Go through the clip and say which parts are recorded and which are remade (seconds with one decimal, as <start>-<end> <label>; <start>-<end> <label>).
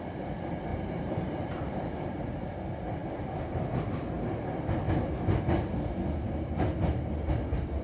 0.0-0.7 recorded; 0.7-2.2 remade; 2.2-7.8 recorded